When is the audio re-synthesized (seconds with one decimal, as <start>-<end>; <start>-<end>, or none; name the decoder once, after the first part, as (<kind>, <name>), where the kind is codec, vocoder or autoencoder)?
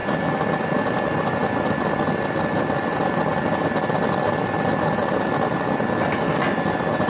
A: none